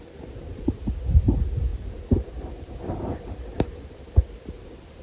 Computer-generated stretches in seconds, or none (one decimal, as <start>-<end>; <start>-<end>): 1.7-5.0